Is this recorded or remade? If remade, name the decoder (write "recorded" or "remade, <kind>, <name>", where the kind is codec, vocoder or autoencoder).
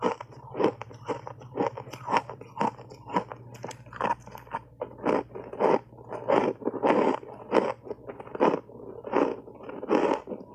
recorded